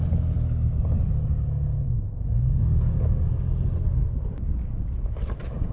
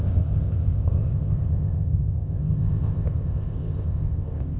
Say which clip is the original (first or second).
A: first